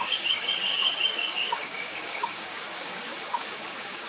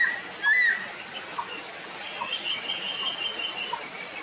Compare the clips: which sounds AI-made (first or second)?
first